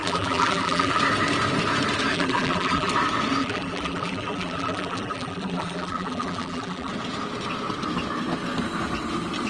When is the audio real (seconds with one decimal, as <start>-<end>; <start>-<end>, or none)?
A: 1.0-2.1; 2.9-3.4; 6.9-9.5